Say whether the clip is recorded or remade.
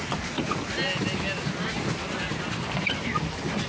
recorded